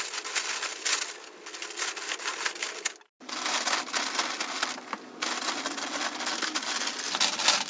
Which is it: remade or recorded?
recorded